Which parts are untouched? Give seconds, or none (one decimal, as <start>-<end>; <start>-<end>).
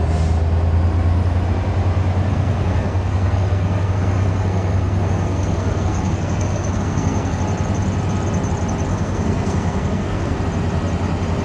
0.0-2.3; 7.4-8.9; 10.4-11.4